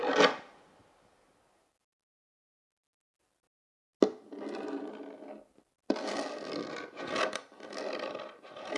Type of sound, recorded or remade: recorded